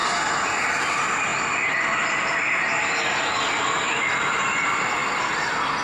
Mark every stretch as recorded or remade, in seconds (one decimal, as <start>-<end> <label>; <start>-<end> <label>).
0.0-1.3 recorded; 1.3-2.7 remade; 2.7-5.8 recorded